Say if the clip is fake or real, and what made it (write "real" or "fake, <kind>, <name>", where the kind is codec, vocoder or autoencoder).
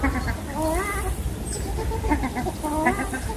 real